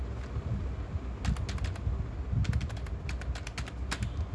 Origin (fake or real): real